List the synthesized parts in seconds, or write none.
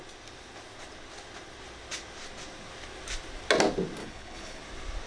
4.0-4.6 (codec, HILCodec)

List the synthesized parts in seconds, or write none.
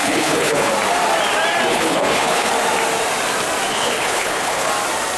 0.0-0.7 (codec, HILCodec); 1.7-2.5; 3.7-4.7